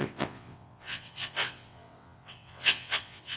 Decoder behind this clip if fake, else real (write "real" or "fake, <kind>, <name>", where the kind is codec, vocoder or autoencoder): fake, vocoder, WaveNeXt